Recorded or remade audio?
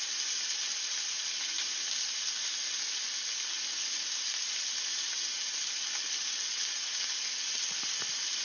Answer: recorded